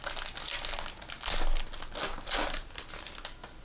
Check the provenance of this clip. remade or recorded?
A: recorded